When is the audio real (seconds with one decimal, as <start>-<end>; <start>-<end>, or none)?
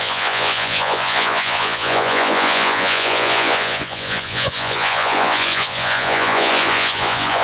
none